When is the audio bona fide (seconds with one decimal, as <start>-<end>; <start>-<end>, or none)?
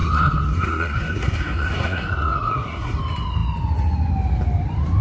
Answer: 3.0-5.0